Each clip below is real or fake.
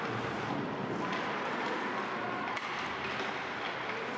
real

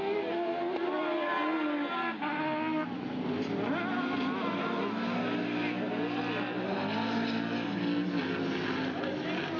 real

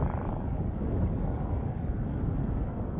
fake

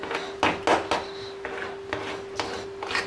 real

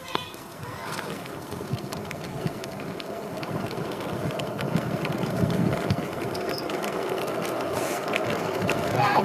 fake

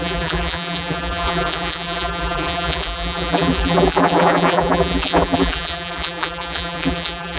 fake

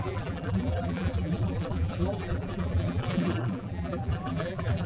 fake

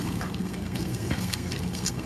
fake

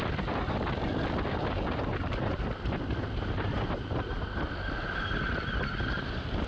real